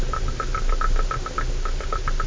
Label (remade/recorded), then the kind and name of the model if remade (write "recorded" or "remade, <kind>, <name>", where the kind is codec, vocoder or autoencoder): recorded